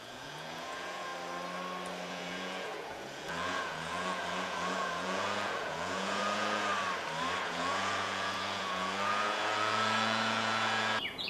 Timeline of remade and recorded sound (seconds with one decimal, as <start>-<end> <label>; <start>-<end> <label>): 0.0-1.1 remade; 1.1-2.1 recorded; 2.1-6.7 remade; 6.7-7.4 recorded; 7.4-11.3 remade